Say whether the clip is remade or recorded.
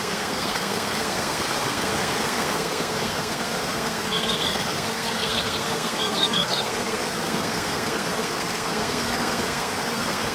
remade